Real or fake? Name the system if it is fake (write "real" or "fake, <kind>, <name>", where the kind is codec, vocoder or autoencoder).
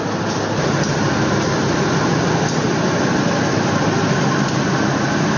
real